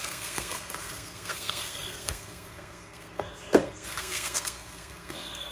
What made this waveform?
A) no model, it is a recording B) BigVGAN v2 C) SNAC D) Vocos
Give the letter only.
C